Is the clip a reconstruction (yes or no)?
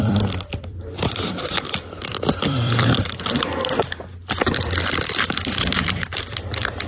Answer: yes